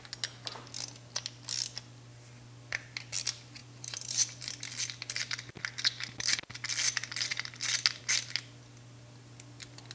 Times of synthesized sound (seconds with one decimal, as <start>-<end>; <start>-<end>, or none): 3.6-4.5